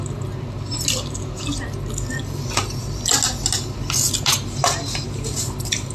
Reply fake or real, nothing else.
real